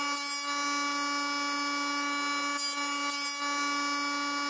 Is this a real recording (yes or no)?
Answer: yes